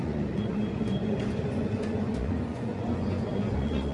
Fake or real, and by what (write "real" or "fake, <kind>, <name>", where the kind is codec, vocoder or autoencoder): fake, vocoder, Vocos